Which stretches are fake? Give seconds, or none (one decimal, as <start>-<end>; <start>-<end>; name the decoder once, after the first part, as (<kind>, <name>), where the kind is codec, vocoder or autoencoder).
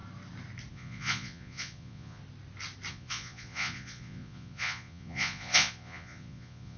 0.7-2.2 (vocoder, Vocos); 2.9-6.8